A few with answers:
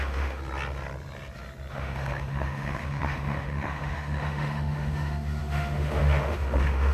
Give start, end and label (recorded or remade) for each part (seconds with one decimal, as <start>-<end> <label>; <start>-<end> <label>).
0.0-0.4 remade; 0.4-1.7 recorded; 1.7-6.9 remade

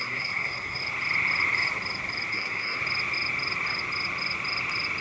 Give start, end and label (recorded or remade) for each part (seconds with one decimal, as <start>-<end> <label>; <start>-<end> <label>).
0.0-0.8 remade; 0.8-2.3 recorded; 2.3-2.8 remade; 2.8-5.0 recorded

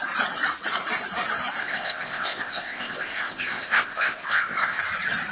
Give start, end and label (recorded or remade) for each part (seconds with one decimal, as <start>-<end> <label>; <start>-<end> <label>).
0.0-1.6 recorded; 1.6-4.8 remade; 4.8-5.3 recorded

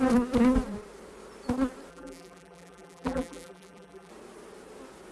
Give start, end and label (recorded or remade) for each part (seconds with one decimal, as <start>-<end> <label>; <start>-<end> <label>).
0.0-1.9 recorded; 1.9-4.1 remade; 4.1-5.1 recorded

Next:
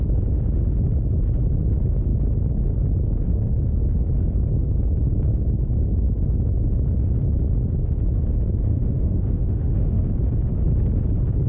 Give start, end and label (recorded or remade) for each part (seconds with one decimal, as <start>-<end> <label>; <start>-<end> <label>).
0.0-8.7 recorded; 8.7-10.1 remade; 10.1-11.5 recorded

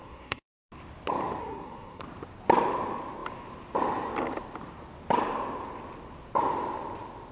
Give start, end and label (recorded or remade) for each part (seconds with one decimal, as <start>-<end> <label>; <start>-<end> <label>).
0.0-0.7 remade; 0.7-1.4 recorded; 1.4-2.0 remade; 2.0-7.3 recorded